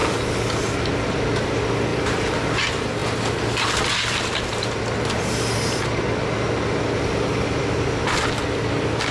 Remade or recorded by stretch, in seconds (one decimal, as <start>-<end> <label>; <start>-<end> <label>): 0.0-9.1 recorded